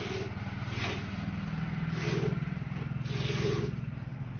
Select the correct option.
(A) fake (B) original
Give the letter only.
B